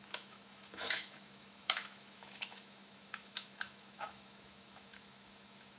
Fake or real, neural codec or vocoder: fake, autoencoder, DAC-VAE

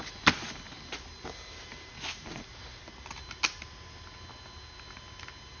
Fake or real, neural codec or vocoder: real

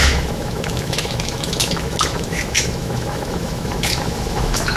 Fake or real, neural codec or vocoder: fake, autoencoder, DAC-VAE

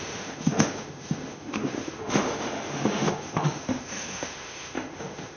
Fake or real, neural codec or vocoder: fake, autoencoder, DAC-VAE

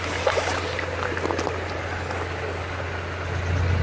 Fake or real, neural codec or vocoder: real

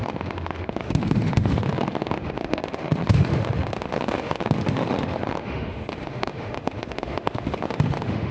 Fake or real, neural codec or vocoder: fake, autoencoder, DAC-VAE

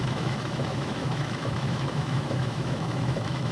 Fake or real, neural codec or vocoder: fake, autoencoder, DAC-VAE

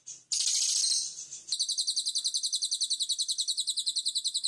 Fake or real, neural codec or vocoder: real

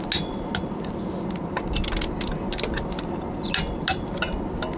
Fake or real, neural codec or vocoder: real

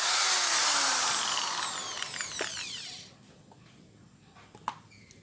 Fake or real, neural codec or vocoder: real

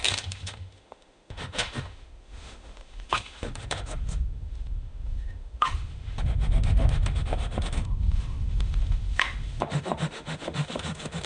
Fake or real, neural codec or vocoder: fake, autoencoder, DAC-VAE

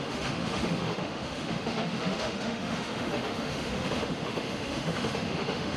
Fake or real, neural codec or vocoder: fake, autoencoder, DAC-VAE